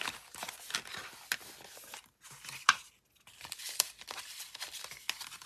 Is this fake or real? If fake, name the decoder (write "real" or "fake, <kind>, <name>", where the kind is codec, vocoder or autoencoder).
real